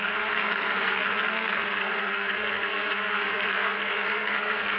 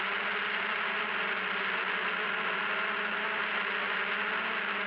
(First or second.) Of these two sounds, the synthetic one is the first